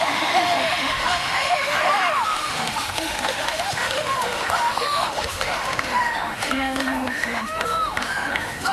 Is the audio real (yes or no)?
no